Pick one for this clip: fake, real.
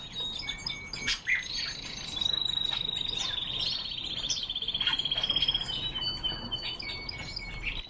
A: real